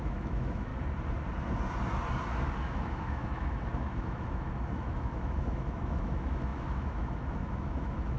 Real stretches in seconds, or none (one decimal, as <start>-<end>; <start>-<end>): 0.7-2.6